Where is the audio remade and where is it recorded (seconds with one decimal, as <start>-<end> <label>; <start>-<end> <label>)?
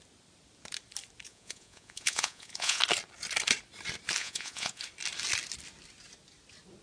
0.0-1.3 recorded; 1.3-2.8 remade; 2.8-4.2 recorded; 4.2-4.8 remade; 4.8-6.8 recorded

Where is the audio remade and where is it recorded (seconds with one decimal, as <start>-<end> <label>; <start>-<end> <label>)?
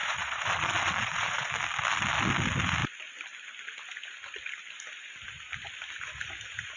0.0-1.5 remade; 1.5-6.8 recorded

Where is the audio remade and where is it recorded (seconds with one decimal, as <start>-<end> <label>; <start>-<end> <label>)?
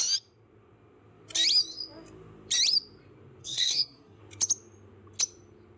0.0-3.4 recorded; 3.4-4.2 remade; 4.2-5.8 recorded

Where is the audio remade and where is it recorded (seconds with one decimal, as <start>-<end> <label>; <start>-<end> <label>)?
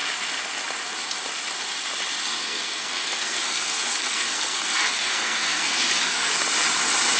0.0-2.4 recorded; 2.4-6.3 remade; 6.3-7.2 recorded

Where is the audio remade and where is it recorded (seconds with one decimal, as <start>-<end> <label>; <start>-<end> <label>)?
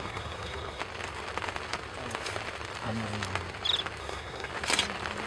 0.0-0.8 remade; 0.8-4.0 recorded; 4.0-4.5 remade; 4.5-5.3 recorded